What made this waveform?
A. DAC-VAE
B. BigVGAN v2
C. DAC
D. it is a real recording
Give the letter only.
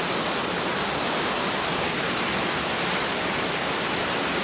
D